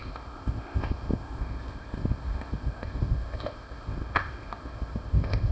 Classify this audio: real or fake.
fake